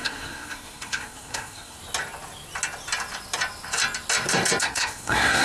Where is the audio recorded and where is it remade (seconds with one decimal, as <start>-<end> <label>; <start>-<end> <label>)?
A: 0.0-1.8 remade; 1.8-4.6 recorded; 4.6-5.4 remade